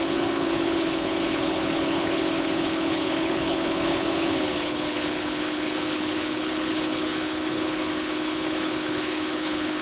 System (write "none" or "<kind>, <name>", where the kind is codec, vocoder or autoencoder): codec, HILCodec